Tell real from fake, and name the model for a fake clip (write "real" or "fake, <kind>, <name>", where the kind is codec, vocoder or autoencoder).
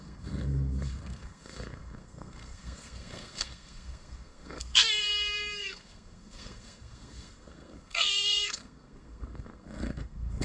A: fake, codec, SNAC